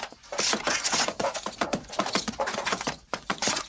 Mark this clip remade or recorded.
remade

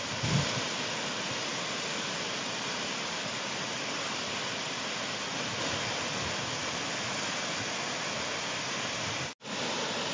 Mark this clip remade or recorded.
recorded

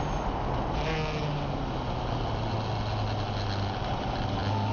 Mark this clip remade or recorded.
recorded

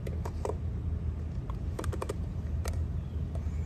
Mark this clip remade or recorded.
recorded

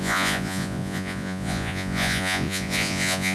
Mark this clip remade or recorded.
remade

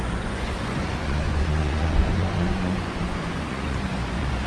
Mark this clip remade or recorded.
remade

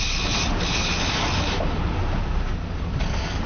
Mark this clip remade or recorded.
recorded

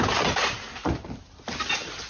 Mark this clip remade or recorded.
recorded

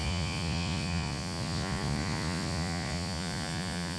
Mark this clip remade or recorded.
remade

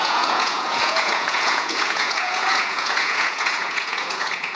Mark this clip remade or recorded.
remade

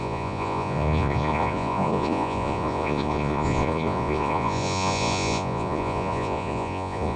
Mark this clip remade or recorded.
remade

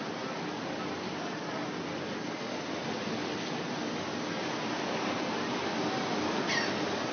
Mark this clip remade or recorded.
recorded